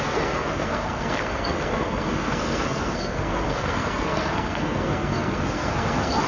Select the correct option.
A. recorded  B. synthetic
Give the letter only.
B